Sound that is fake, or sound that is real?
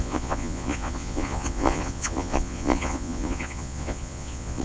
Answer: fake